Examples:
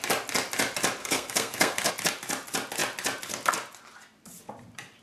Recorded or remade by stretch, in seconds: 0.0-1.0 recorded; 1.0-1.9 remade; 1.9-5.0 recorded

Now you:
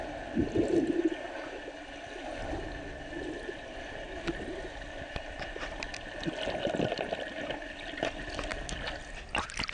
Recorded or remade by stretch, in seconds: 0.0-9.7 recorded

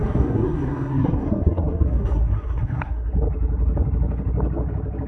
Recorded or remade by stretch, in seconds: 0.0-3.1 remade; 3.1-5.1 recorded

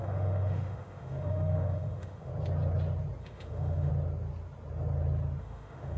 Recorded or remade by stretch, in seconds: 0.0-2.3 remade; 2.3-3.2 recorded; 3.2-3.9 remade; 3.9-5.4 recorded; 5.4-6.0 remade

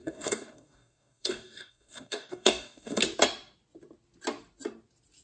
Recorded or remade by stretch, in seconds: 0.0-3.0 remade; 3.0-5.2 recorded

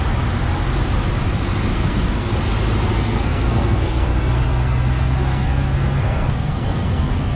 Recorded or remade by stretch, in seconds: 0.0-1.7 recorded; 1.7-2.3 remade; 2.3-2.9 recorded; 2.9-7.4 remade

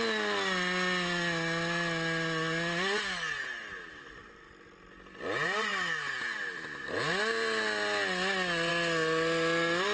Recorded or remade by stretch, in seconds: 0.0-9.9 recorded